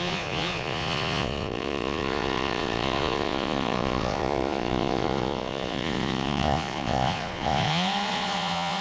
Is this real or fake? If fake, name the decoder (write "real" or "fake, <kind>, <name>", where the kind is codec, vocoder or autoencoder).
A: fake, vocoder, Vocos